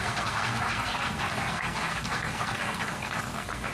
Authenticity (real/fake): fake